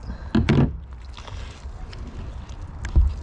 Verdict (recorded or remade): recorded